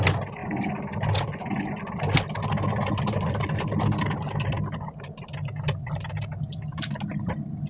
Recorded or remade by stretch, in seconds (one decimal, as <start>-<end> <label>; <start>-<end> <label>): 0.0-7.7 recorded